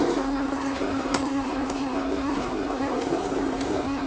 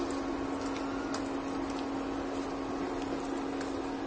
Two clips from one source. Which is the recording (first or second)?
second